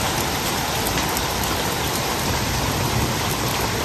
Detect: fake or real fake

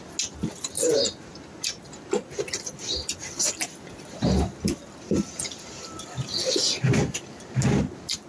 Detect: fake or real real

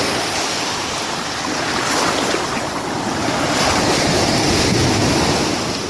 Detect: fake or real fake